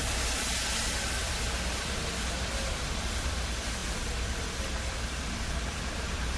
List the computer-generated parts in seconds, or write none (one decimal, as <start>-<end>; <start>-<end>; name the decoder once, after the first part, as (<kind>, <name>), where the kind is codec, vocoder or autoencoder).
none